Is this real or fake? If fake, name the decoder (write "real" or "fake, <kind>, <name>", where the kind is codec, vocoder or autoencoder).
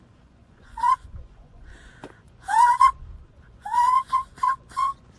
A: fake, vocoder, Vocos